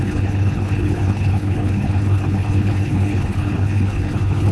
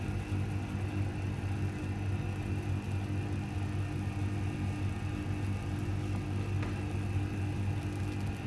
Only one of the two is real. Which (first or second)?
second